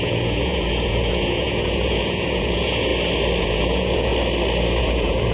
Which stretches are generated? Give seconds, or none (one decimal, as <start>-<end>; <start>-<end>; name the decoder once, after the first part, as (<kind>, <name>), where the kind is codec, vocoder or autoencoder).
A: 0.0-2.9 (vocoder, Vocos); 3.4-4.1; 4.8-5.3